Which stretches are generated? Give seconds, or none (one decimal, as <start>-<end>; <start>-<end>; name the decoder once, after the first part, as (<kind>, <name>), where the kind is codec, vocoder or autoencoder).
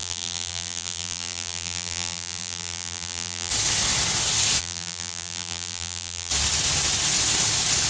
0.0-3.5 (vocoder, BigVGAN v2); 4.6-6.3